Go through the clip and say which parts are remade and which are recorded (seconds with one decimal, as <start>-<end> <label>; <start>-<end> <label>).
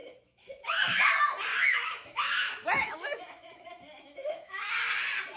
0.0-1.1 remade; 1.1-1.5 recorded; 1.5-4.7 remade; 4.7-5.4 recorded